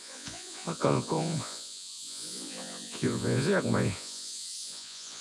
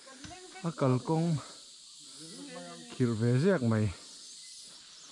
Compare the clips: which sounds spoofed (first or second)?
first